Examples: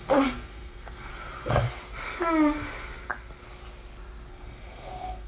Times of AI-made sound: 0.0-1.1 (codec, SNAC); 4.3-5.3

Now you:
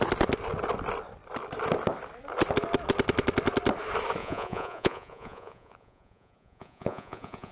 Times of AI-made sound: 4.2-7.5 (vocoder, Vocos)

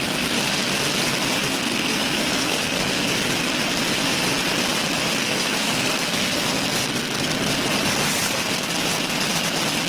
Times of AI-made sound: 1.5-3.2 (codec, SNAC); 5.2-6.4